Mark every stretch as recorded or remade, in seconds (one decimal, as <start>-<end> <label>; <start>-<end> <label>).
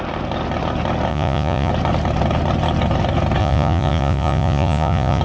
0.0-1.1 recorded; 1.1-1.7 remade; 1.7-3.4 recorded; 3.4-5.2 remade